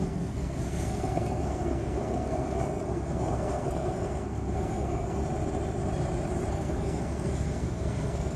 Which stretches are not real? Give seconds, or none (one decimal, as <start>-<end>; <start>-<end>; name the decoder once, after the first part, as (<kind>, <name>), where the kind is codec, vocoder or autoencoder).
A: 0.0-5.2 (codec, SNAC); 6.5-8.4

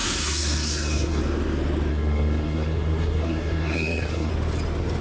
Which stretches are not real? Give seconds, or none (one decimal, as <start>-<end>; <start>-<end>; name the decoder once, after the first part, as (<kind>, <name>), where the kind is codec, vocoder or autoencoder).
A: 0.0-1.2 (codec, SNAC); 1.9-4.3

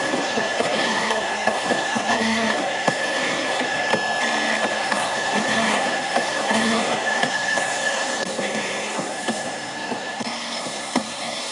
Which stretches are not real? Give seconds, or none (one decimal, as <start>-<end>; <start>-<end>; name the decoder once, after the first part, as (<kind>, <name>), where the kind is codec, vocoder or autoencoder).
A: 0.0-3.9 (codec, SNAC); 4.7-11.5

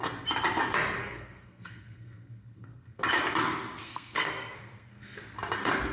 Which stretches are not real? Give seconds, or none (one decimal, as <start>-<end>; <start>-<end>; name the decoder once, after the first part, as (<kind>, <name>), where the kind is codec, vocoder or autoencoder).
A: 1.0-3.0 (codec, SNAC); 3.8-5.2